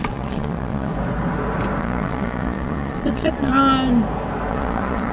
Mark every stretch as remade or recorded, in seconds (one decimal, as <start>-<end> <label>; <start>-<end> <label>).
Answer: 0.0-0.9 remade; 0.9-1.8 recorded; 1.8-3.5 remade; 3.5-4.5 recorded; 4.5-5.1 remade